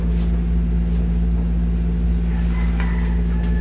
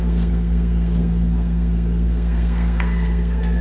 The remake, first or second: second